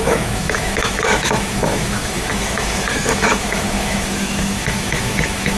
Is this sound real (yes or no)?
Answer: no